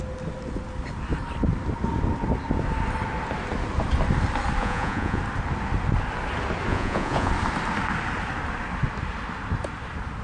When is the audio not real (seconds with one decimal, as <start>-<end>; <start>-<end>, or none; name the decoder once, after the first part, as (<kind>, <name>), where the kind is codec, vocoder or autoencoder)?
4.6-5.2 (vocoder, Vocos); 6.7-7.3